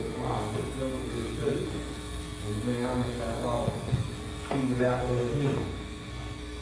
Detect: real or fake fake